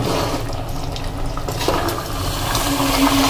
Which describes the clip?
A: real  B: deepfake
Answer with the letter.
A